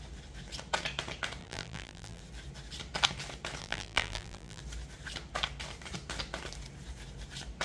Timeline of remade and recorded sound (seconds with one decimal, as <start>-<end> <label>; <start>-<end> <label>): 0.0-1.4 recorded; 1.4-2.2 remade; 2.2-3.6 recorded; 3.6-4.6 remade; 4.6-7.6 recorded